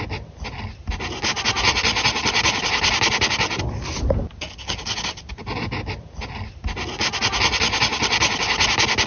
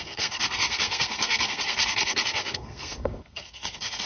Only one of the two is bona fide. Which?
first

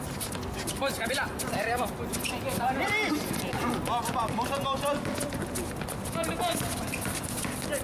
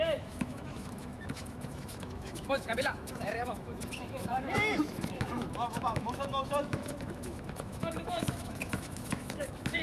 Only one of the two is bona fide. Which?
first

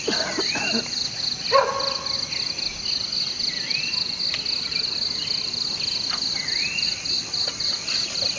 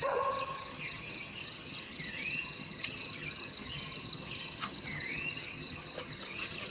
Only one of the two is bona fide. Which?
first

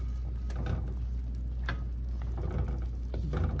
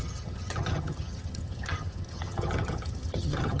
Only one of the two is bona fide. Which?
first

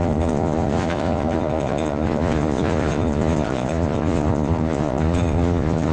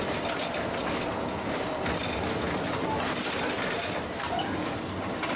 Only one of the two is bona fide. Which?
second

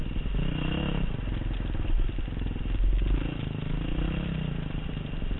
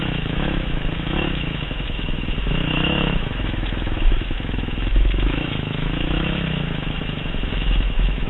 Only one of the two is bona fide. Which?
first